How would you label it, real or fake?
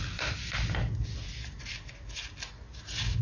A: real